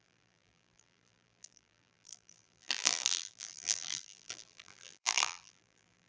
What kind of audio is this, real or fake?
fake